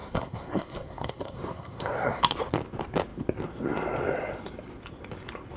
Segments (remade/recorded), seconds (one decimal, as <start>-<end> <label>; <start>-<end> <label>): 0.0-2.2 remade; 2.2-5.6 recorded